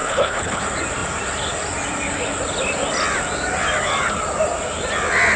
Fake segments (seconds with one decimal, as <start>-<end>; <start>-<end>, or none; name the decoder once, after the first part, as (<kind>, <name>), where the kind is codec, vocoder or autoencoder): 0.0-0.6 (codec, HILCodec)